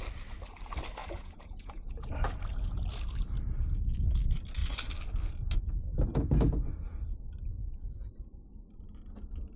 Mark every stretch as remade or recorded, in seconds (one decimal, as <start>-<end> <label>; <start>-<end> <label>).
0.0-1.0 recorded; 1.0-2.1 remade; 2.1-9.6 recorded